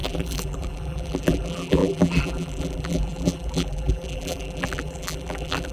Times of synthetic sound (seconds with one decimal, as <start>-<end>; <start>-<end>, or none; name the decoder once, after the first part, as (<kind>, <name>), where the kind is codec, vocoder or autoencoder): 0.0-5.7 (vocoder, BigVGAN v2)